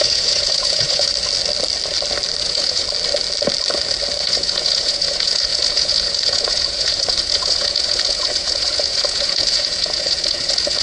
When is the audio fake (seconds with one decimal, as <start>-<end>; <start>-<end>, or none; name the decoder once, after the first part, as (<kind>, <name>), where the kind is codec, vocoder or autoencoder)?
0.0-1.1 (vocoder, Vocos); 2.4-2.8; 4.2-10.8